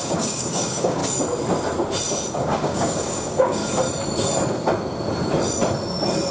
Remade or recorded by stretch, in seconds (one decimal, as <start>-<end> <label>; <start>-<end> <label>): 0.0-1.0 remade; 1.0-2.3 recorded; 2.3-3.6 remade; 3.6-6.3 recorded